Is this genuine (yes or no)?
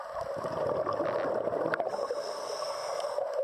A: yes